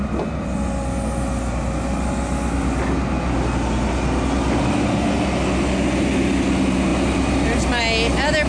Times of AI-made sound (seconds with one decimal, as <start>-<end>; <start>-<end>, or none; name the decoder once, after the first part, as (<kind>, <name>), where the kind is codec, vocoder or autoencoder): none